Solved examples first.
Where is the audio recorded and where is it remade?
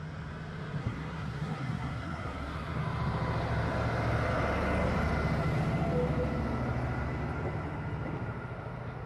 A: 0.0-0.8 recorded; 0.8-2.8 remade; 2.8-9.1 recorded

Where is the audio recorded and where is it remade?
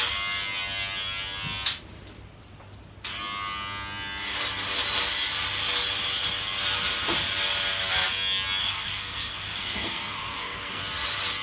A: 0.0-8.6 recorded; 8.6-10.8 remade; 10.8-11.4 recorded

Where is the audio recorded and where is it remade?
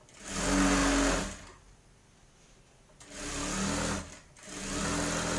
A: 0.0-5.4 recorded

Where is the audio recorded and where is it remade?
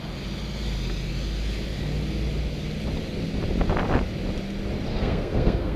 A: 0.0-4.9 recorded; 4.9-5.8 remade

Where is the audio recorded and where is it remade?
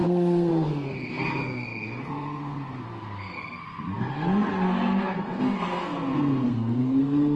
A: 0.0-7.4 remade